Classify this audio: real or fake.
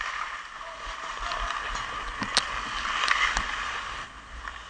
real